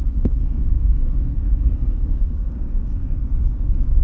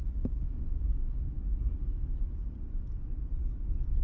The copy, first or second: first